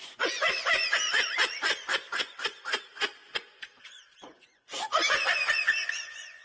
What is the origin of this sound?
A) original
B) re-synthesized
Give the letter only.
B